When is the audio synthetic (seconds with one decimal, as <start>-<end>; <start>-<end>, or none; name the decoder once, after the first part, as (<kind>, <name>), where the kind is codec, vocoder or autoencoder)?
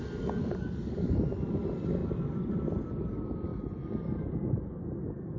none